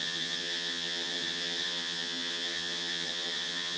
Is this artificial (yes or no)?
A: yes